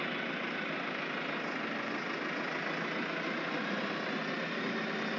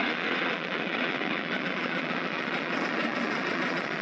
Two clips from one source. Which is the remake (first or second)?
second